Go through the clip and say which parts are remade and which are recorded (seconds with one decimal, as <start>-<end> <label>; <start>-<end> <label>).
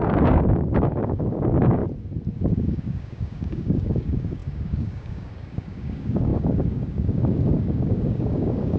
0.0-1.8 remade; 1.8-2.3 recorded; 2.3-8.8 remade